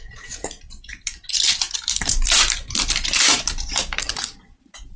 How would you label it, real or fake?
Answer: fake